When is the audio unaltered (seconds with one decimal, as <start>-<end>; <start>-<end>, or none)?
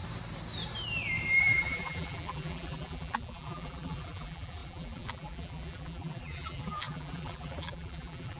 0.0-1.4